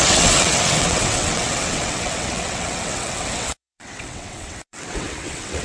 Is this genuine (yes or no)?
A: no